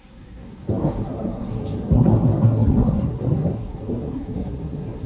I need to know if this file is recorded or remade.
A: remade